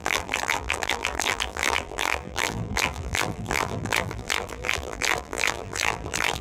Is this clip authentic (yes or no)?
no